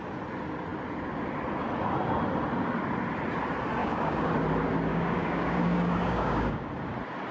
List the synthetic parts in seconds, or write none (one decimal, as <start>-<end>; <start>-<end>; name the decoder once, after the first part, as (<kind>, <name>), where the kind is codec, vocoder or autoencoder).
3.8-4.3 (codec, DAC); 4.9-6.7